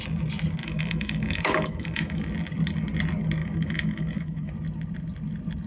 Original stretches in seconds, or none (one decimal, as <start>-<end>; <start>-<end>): 0.0-0.6; 2.3-3.4; 4.5-5.7